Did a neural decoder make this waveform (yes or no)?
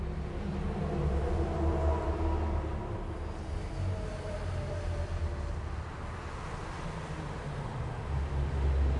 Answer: no